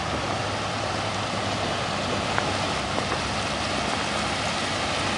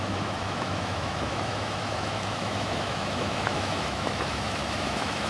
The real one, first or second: first